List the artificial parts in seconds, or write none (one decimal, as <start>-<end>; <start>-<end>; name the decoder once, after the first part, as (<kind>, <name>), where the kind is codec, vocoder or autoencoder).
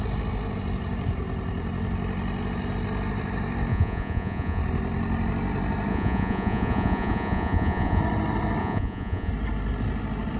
3.7-4.6 (vocoder, Vocos); 5.9-8.0; 8.6-9.3